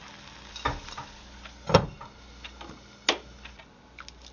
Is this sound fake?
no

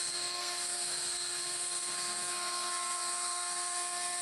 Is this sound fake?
yes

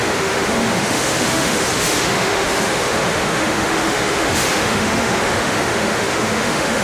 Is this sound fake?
yes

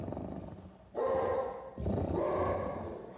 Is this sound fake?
no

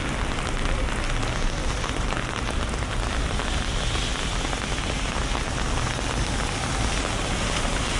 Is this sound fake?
no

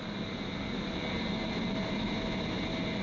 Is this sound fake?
no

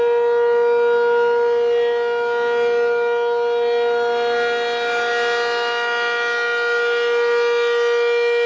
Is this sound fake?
no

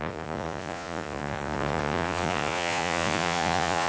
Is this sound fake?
yes